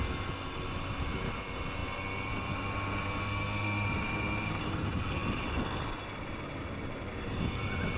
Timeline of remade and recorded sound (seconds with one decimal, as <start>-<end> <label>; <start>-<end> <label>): 0.0-8.0 recorded

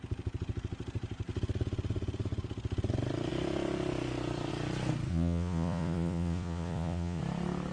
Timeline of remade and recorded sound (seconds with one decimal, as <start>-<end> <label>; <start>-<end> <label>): 0.0-5.1 recorded; 5.1-7.2 remade; 7.2-7.7 recorded

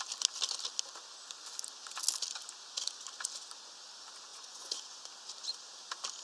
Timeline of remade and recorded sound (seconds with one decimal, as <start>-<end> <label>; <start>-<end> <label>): 0.0-4.3 recorded; 4.3-5.0 remade; 5.0-6.2 recorded

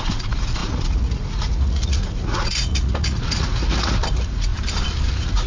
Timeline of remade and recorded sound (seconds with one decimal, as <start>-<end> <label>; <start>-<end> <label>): 0.0-4.5 remade; 4.5-5.1 recorded; 5.1-5.5 remade

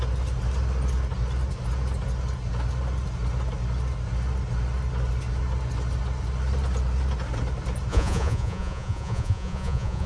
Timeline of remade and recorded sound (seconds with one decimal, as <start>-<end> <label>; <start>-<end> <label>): 0.0-7.9 recorded; 7.9-10.1 remade

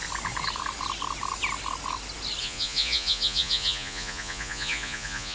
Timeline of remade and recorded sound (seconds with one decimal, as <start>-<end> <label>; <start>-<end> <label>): 0.0-2.4 recorded; 2.4-5.3 remade